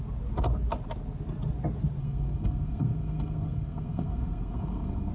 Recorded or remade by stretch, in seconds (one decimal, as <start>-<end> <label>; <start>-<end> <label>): 0.0-2.0 recorded; 2.0-5.1 remade